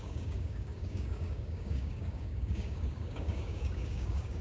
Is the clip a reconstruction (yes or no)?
yes